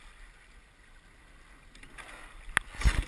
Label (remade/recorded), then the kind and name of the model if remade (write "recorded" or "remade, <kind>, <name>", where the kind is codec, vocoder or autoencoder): recorded